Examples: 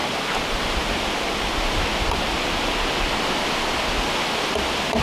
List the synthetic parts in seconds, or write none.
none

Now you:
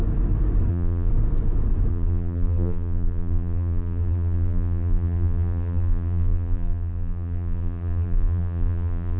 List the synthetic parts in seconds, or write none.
0.7-1.1 (vocoder, BigVGAN v2); 1.9-9.2